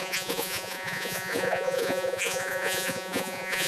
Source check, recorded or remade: remade